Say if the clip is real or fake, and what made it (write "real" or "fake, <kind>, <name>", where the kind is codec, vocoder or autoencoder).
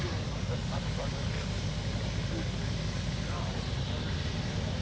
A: real